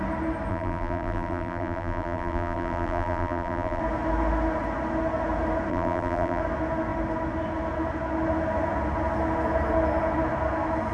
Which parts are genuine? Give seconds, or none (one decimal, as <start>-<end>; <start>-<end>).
0.0-0.5; 3.8-5.7; 6.4-10.9